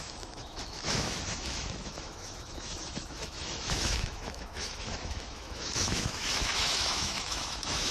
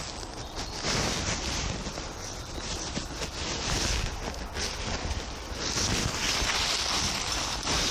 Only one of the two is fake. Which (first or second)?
first